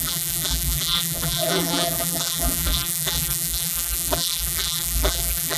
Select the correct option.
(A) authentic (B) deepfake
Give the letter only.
B